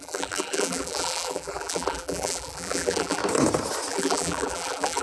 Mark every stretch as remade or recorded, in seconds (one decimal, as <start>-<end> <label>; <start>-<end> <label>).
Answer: 0.0-3.2 remade; 3.2-3.9 recorded; 3.9-5.0 remade